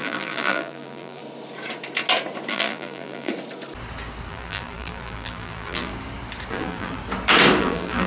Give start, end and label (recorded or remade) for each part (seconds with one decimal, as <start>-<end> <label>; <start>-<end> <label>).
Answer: 0.0-1.2 remade; 1.2-2.5 recorded; 2.5-3.3 remade; 3.3-4.3 recorded; 4.3-5.9 remade; 5.9-6.5 recorded; 6.5-7.0 remade; 7.0-7.6 recorded; 7.6-8.1 remade